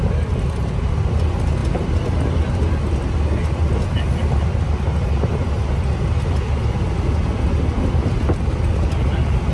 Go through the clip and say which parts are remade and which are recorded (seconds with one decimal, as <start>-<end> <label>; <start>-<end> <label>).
0.0-9.5 recorded